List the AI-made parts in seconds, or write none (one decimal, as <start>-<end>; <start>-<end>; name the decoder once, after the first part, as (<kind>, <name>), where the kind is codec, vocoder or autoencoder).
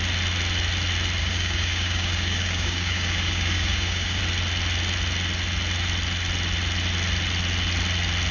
1.2-4.2 (codec, DAC)